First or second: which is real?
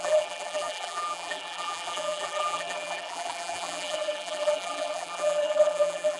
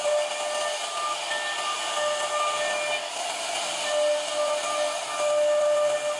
second